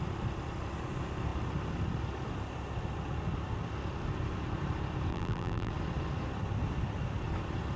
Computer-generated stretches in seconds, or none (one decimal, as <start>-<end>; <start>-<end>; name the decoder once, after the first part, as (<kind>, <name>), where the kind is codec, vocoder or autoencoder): 5.1-5.7 (vocoder, BigVGAN v2)